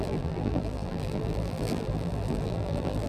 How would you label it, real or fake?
fake